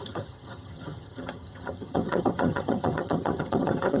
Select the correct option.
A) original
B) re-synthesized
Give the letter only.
B